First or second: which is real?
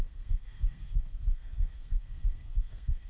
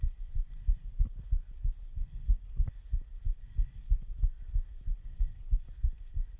second